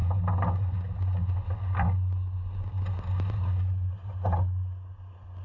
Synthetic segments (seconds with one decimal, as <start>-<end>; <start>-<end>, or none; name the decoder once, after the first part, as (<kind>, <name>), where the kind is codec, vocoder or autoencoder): none